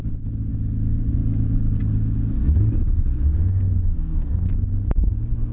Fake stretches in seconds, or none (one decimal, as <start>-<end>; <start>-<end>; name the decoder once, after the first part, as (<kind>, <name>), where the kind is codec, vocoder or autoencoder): 3.4-4.5 (codec, SNAC)

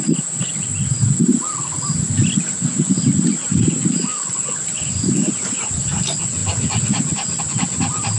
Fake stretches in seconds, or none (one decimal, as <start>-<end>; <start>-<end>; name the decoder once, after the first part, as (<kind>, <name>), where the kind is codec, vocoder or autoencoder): none

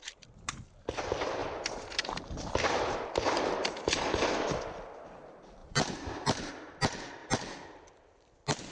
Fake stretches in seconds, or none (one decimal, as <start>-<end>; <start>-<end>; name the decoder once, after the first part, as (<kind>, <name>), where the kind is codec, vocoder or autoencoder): 0.0-0.7 (vocoder, BigVGAN v2); 1.4-3.1; 5.6-6.5

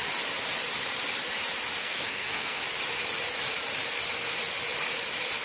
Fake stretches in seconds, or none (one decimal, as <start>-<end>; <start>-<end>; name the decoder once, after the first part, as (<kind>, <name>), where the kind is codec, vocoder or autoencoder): 1.8-2.6 (codec, SNAC)

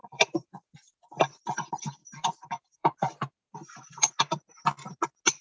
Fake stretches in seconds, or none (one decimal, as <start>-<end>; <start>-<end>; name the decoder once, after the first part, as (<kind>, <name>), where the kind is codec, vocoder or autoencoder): 0.0-0.9 (vocoder, BigVGAN v2); 2.0-4.1

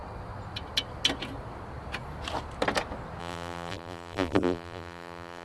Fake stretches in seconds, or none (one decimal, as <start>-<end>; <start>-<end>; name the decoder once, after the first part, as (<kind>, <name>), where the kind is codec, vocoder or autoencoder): 3.2-5.4 (vocoder, BigVGAN v2)